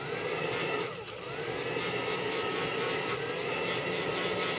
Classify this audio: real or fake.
real